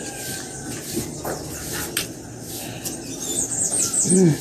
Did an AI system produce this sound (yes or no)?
no